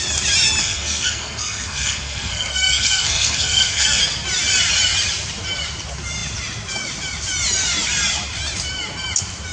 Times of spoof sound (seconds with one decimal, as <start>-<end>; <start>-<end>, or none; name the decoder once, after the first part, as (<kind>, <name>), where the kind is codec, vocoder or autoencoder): 0.6-4.0 (codec, SNAC)